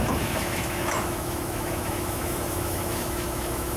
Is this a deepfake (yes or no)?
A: yes